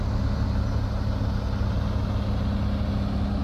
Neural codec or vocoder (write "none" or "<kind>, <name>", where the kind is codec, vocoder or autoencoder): none